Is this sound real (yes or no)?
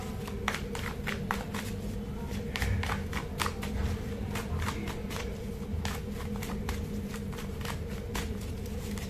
yes